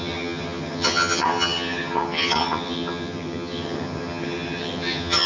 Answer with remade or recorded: remade